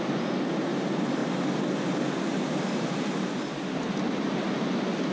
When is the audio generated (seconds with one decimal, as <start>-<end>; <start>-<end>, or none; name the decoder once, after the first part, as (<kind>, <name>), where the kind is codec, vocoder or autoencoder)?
none